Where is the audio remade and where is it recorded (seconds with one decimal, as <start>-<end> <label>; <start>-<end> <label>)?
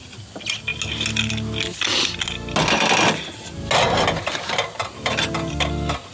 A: 0.0-6.1 recorded